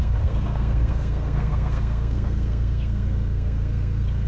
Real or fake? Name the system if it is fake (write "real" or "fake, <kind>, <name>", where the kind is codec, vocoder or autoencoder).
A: fake, codec, SNAC